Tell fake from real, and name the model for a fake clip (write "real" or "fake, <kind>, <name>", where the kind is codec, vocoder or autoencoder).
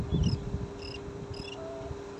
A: real